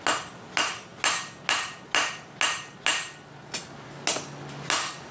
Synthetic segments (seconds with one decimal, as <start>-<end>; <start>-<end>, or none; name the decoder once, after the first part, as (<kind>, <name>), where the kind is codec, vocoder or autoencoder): none